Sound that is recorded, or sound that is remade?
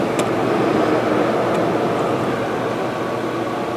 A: recorded